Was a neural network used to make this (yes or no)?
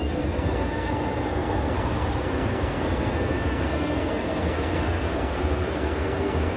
yes